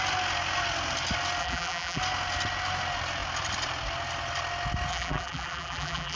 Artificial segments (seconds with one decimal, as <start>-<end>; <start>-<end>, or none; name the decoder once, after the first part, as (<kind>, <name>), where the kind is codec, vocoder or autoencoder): 1.4-2.0 (vocoder, BigVGAN v2); 4.9-6.2